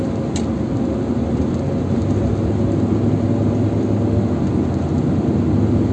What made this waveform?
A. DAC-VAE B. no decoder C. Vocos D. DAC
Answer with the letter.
B